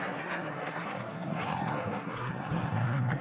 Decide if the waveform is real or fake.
fake